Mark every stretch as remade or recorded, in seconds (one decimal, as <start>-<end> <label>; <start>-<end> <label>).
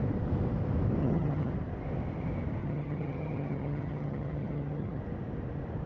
0.0-1.0 recorded; 1.0-1.5 remade; 1.5-2.6 recorded; 2.6-5.0 remade; 5.0-5.9 recorded